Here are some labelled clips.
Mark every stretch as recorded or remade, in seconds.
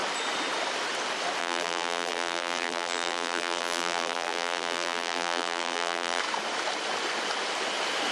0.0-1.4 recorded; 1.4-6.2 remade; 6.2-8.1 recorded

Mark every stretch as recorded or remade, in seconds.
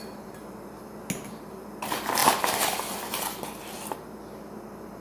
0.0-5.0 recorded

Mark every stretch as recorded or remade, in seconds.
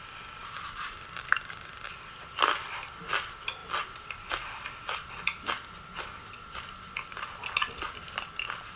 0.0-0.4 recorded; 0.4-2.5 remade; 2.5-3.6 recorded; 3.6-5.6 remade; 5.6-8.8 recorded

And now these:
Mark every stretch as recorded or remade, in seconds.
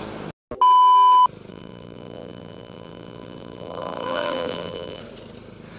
0.0-1.5 recorded; 1.5-5.0 remade; 5.0-5.8 recorded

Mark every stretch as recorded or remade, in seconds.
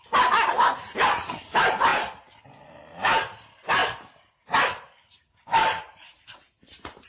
0.0-5.6 recorded; 5.6-6.5 remade; 6.5-7.1 recorded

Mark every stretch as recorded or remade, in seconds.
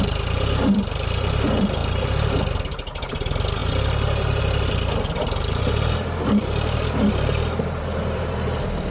0.0-8.9 remade